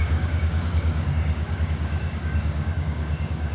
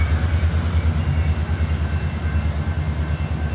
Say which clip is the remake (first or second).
first